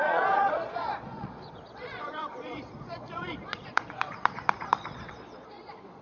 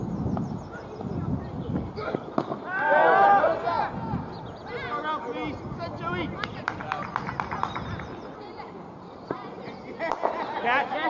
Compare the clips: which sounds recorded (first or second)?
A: second